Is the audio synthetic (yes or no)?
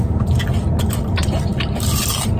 no